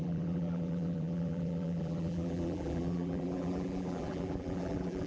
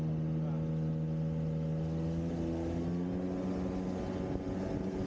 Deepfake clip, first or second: first